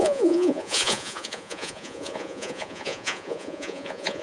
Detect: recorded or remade remade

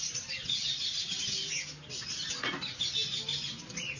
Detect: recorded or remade recorded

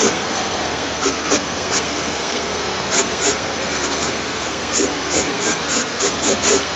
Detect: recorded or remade remade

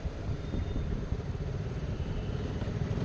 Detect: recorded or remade remade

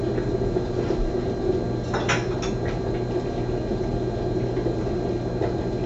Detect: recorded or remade recorded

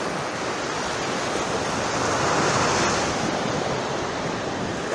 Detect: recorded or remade recorded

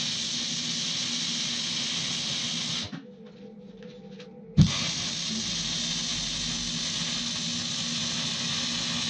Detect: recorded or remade recorded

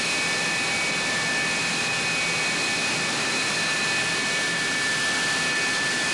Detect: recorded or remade recorded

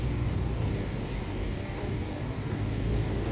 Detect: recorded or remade remade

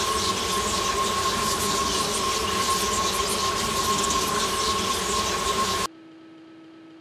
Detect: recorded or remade recorded